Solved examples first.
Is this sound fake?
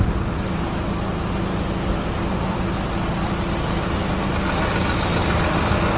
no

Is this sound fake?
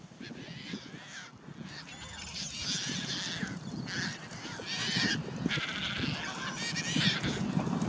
no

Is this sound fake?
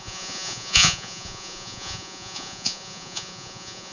yes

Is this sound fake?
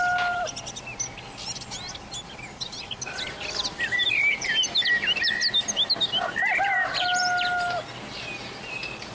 no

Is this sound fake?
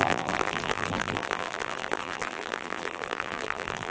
yes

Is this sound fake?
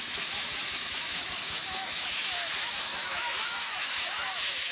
yes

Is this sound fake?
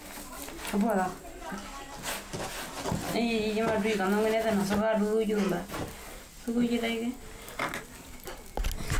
no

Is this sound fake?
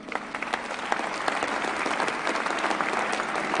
no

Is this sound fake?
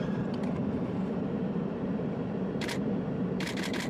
yes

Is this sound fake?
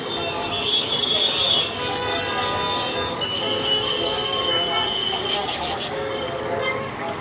yes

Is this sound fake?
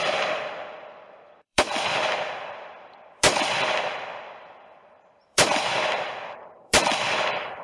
yes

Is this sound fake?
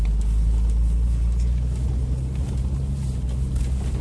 no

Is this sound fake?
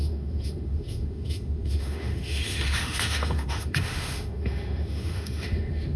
yes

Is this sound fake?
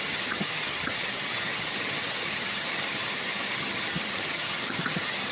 yes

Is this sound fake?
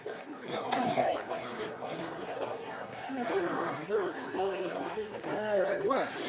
yes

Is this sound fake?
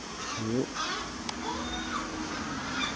no